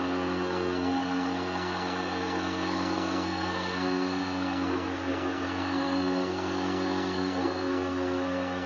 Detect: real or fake fake